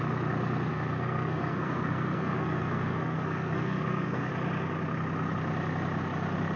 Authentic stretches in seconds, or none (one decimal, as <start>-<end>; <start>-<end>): 0.0-0.7; 4.3-6.6

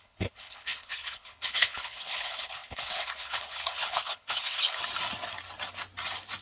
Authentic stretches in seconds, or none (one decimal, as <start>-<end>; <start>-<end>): 4.8-6.4

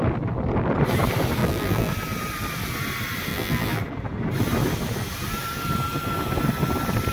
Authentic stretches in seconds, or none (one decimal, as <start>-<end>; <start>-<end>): 0.0-1.4; 1.9-3.3; 3.8-7.1

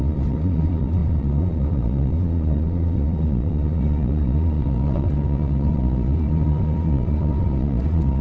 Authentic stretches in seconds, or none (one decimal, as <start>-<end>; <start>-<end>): none

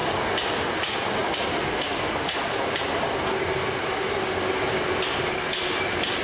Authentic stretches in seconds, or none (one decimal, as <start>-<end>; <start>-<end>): 0.0-6.2